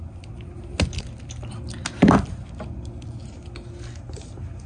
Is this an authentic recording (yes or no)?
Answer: yes